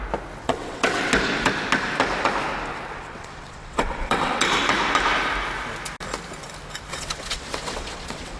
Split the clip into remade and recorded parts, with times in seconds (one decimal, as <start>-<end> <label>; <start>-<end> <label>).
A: 0.0-0.4 recorded; 0.4-1.1 remade; 1.1-2.7 recorded; 2.7-4.4 remade; 4.4-6.9 recorded; 6.9-8.4 remade